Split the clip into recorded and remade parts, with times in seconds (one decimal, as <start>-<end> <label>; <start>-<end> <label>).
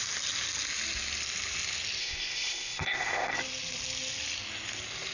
0.0-2.0 recorded; 2.0-3.3 remade; 3.3-5.1 recorded